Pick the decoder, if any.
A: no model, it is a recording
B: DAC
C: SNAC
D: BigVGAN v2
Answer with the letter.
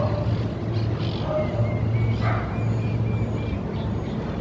A